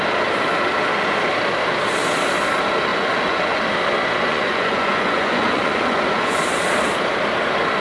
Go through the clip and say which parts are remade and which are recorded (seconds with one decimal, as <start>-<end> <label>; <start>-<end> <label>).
0.0-2.9 recorded; 2.9-3.6 remade; 3.6-4.3 recorded; 4.3-6.4 remade; 6.4-7.8 recorded